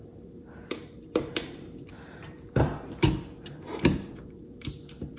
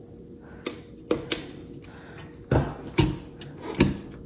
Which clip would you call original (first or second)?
second